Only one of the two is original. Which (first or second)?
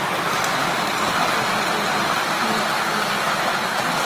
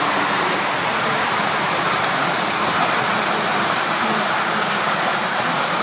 first